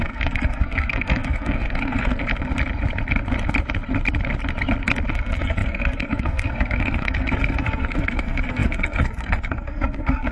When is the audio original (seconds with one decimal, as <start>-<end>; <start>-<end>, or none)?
2.2-5.1